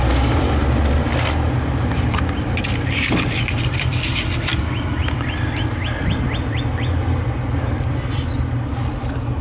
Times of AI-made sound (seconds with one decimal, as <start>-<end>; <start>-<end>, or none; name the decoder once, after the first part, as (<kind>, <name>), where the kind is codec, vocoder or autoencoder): none